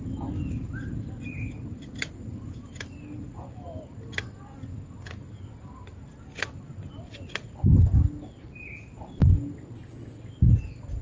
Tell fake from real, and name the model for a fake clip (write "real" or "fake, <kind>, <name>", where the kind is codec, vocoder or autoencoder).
real